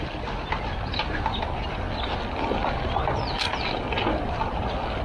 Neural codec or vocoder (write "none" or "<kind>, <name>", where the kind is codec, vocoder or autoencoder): none